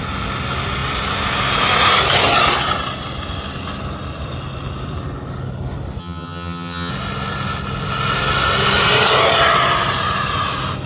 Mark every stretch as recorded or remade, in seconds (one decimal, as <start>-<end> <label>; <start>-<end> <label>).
0.0-6.0 recorded; 6.0-6.9 remade; 6.9-10.9 recorded